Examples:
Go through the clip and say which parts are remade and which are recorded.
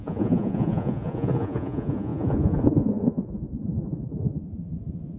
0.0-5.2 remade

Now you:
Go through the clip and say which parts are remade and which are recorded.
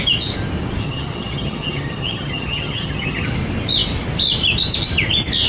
0.0-0.8 recorded; 0.8-3.3 remade; 3.3-5.5 recorded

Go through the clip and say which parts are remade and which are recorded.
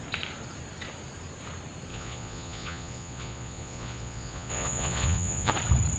0.0-1.9 recorded; 1.9-5.5 remade; 5.5-6.0 recorded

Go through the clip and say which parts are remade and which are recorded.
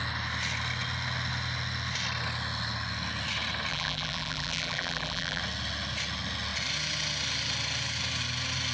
0.0-3.7 recorded; 3.7-5.4 remade; 5.4-8.7 recorded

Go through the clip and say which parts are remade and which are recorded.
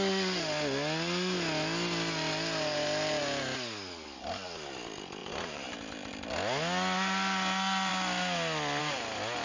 0.0-5.2 recorded; 5.2-6.1 remade; 6.1-9.4 recorded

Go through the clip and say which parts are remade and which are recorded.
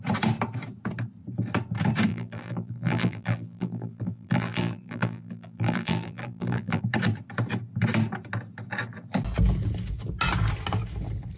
0.0-2.1 recorded; 2.1-6.8 remade; 6.8-11.4 recorded